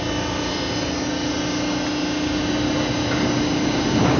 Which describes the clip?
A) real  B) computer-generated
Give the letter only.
A